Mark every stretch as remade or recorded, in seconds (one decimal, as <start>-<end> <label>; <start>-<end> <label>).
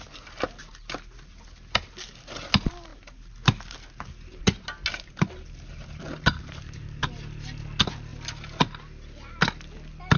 0.0-10.2 recorded